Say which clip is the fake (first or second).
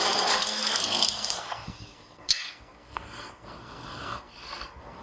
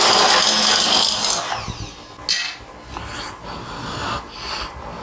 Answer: first